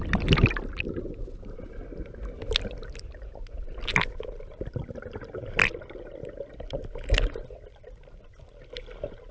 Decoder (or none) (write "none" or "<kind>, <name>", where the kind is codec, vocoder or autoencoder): none